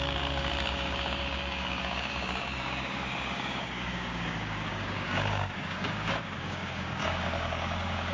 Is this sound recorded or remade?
remade